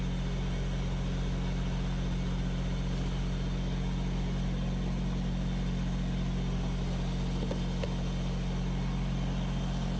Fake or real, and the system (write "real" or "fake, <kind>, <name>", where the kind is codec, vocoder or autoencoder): real